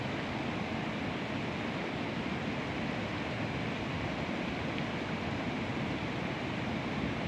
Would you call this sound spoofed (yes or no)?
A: no